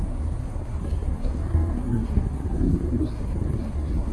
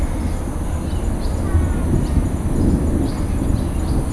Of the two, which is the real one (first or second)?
second